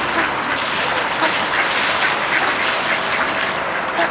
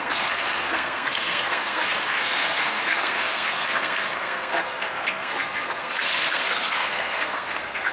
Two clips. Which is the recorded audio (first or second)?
first